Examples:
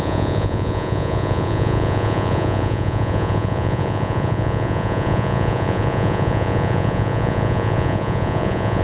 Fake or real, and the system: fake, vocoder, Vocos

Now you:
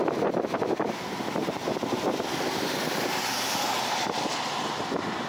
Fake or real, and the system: fake, vocoder, BigVGAN v2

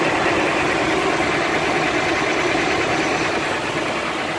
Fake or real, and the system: real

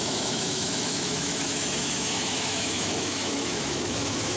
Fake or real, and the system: fake, autoencoder, DAC-VAE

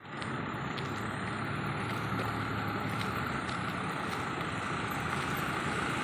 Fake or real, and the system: real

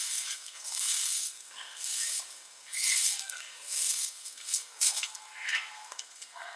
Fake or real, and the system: fake, codec, SNAC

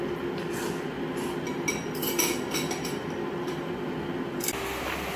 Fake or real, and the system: real